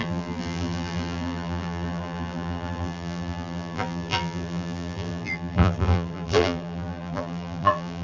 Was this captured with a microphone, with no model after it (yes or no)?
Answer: no